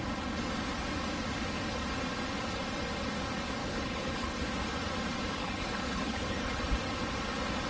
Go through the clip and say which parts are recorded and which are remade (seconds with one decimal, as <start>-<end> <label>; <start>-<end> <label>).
0.0-3.6 recorded; 3.6-4.4 remade; 4.4-5.4 recorded; 5.4-6.6 remade; 6.6-7.7 recorded